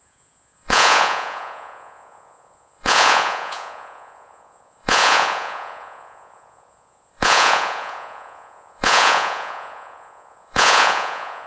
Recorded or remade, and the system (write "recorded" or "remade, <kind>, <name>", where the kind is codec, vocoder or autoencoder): remade, vocoder, Vocos